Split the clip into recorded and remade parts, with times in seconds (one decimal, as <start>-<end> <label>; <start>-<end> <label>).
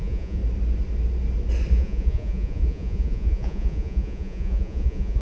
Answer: 0.0-0.4 remade; 0.4-1.7 recorded; 1.7-5.2 remade